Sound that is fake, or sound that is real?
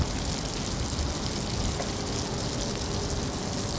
real